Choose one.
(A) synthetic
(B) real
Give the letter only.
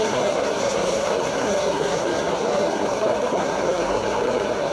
A